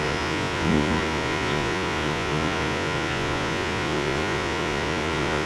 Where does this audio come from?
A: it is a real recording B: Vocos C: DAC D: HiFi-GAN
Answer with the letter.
B